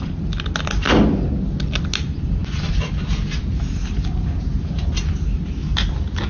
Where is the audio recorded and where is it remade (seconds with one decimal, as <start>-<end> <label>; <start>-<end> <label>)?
0.0-6.3 recorded